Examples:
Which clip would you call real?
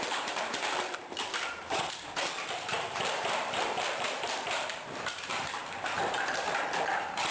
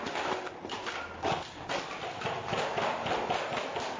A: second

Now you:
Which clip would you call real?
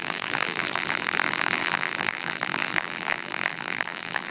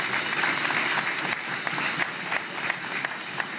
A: second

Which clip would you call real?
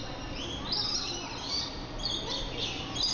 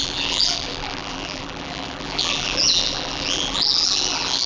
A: first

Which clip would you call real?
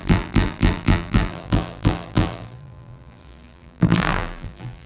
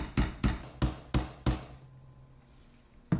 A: second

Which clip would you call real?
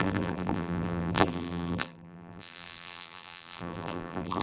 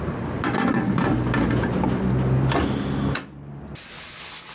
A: second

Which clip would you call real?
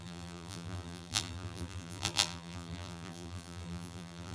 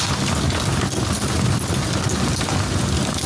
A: second